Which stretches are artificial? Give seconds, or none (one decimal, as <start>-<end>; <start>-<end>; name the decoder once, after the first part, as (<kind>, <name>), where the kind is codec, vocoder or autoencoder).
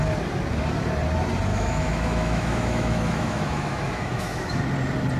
1.5-4.6 (autoencoder, DAC-VAE)